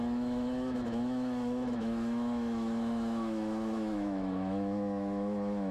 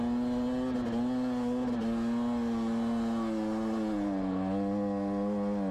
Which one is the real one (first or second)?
second